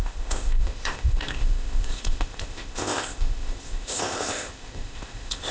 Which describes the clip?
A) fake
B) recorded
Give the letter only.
A